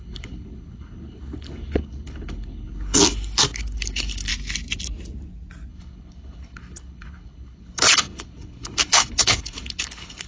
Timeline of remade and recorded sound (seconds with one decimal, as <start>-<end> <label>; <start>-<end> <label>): 0.0-4.3 remade; 4.3-5.7 recorded; 5.7-10.3 remade